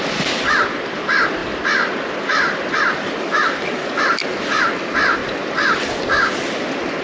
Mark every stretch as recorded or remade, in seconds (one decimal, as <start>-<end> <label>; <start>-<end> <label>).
0.0-7.0 recorded

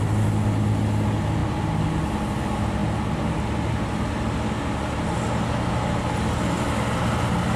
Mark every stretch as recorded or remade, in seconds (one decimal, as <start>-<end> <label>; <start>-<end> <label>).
0.0-7.6 recorded

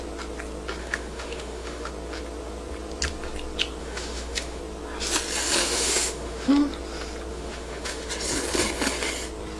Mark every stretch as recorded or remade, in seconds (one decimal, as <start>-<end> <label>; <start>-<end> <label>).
0.0-0.8 recorded; 0.8-1.9 remade; 1.9-3.8 recorded; 3.8-4.6 remade; 4.6-5.6 recorded; 5.6-6.5 remade; 6.5-7.3 recorded; 7.3-8.1 remade; 8.1-9.6 recorded

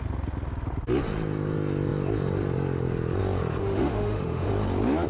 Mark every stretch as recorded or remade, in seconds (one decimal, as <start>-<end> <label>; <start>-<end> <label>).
0.0-3.6 recorded; 3.6-4.5 remade; 4.5-5.1 recorded

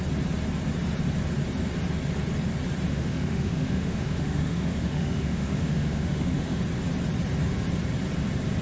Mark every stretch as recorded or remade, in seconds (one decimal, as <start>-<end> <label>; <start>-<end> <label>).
0.0-2.9 recorded; 2.9-6.6 remade; 6.6-8.6 recorded

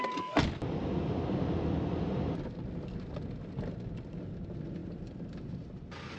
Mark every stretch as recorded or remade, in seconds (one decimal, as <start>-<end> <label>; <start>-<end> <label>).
0.0-6.2 recorded

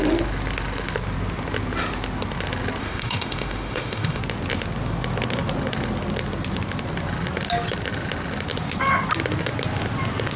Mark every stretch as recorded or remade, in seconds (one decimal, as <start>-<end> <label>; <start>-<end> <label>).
0.0-2.8 recorded; 2.8-4.2 remade; 4.2-10.4 recorded